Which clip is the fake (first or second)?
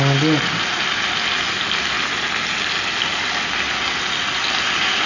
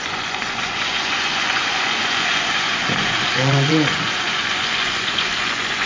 second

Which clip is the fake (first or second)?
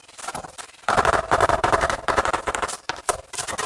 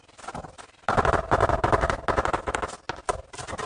first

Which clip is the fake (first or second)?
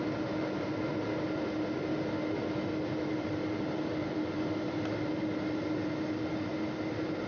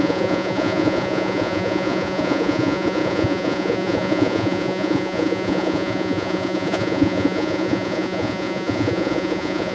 second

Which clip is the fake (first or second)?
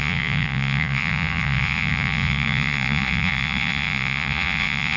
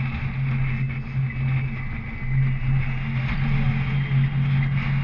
first